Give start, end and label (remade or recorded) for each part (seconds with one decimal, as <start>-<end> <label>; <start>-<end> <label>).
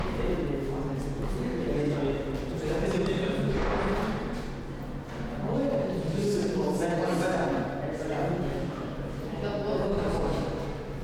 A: 0.0-11.0 recorded